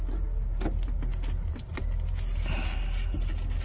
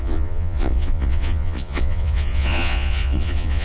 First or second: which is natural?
first